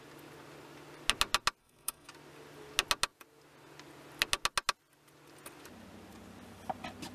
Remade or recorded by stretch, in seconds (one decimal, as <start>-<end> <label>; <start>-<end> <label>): 0.0-1.6 recorded; 1.6-2.1 remade; 2.1-7.1 recorded